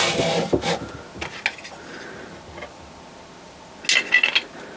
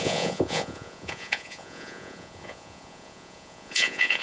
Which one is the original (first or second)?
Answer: first